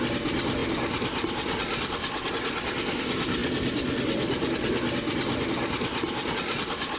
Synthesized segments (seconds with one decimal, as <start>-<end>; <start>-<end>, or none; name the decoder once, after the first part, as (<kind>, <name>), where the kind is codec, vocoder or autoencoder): none